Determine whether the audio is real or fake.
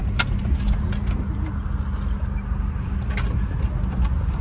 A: real